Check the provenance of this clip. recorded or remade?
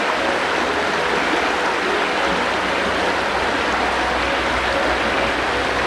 recorded